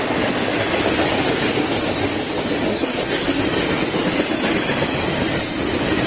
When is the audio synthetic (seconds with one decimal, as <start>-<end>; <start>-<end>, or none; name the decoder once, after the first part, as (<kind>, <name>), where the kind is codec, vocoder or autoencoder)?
2.7-3.4 (codec, SNAC)